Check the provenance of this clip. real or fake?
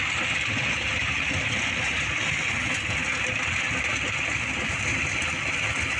real